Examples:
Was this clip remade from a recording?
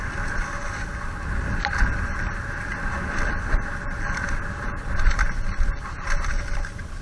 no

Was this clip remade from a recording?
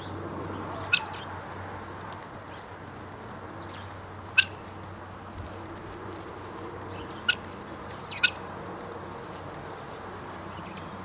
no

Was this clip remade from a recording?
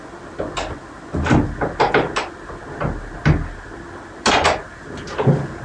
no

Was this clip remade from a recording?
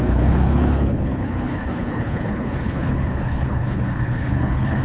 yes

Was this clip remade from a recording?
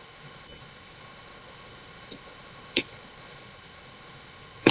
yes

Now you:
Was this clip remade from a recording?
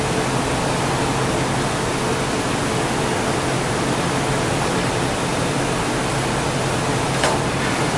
no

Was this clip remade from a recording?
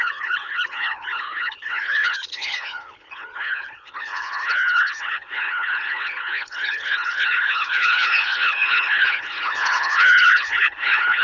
yes